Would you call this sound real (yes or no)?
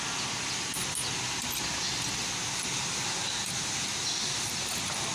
yes